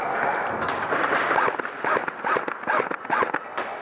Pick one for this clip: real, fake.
real